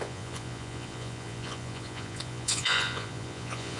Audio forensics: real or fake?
fake